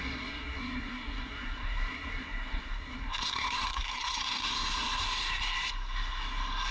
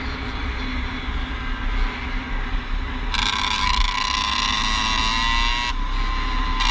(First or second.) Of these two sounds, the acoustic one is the second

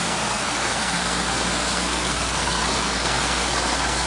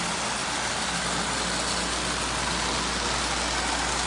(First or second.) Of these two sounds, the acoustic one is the second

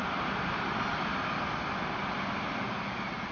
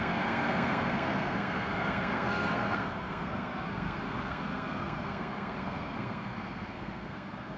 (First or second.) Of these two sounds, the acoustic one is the first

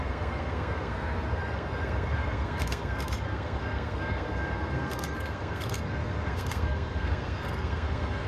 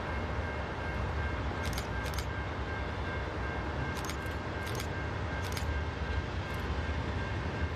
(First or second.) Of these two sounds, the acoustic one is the second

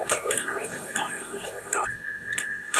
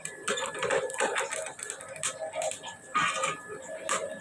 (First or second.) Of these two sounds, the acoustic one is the second